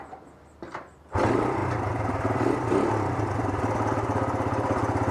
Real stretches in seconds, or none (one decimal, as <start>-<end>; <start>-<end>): 0.0-1.6